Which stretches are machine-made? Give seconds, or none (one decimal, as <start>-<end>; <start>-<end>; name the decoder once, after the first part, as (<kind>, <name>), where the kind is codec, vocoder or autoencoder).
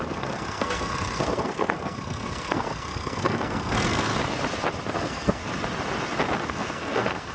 0.0-4.1 (codec, SNAC); 4.9-5.4; 6.4-7.3